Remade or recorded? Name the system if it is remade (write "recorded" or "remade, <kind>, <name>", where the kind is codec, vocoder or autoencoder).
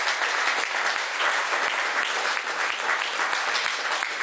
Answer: recorded